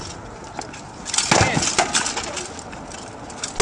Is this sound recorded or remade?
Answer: recorded